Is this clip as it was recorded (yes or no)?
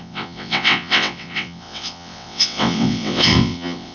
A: no